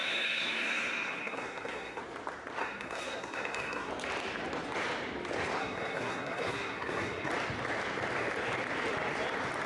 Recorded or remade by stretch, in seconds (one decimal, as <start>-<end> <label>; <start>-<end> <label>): 0.0-2.0 remade; 2.0-2.6 recorded; 2.6-3.9 remade; 3.9-5.6 recorded; 5.6-7.3 remade; 7.3-9.7 recorded